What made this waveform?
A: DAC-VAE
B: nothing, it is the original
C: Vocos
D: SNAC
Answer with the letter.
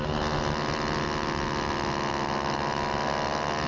B